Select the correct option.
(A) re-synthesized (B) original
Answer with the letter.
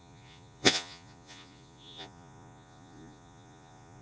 A